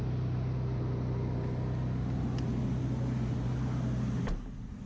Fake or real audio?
real